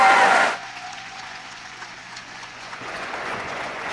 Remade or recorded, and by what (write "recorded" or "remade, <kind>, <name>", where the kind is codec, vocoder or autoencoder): remade, vocoder, Vocos